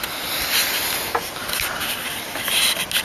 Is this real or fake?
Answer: real